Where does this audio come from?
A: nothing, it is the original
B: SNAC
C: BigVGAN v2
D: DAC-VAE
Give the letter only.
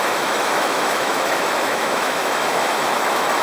D